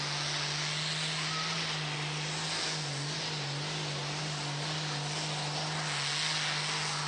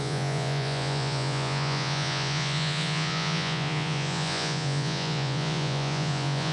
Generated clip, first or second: second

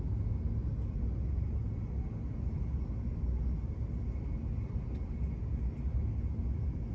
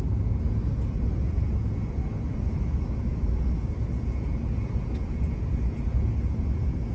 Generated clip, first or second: second